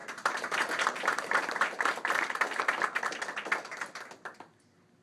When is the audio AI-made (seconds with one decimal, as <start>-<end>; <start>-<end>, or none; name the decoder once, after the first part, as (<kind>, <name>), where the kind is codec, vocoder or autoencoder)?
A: 0.0-3.0 (vocoder, BigVGAN v2)